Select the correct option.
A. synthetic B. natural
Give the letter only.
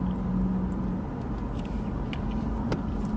B